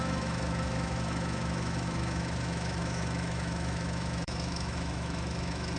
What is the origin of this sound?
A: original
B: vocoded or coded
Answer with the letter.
B